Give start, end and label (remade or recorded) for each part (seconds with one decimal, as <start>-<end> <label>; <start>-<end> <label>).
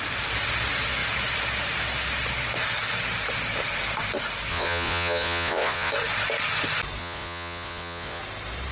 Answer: 0.0-4.5 recorded; 4.5-5.9 remade; 5.9-7.0 recorded; 7.0-8.2 remade; 8.2-8.7 recorded